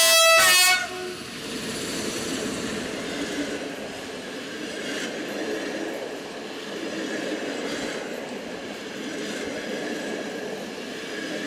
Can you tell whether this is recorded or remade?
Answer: recorded